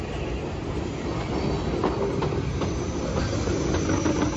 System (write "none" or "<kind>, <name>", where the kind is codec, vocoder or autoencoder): none